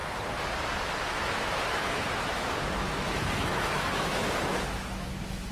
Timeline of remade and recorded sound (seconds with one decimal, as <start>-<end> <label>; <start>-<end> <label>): 0.0-1.1 recorded; 1.1-5.5 remade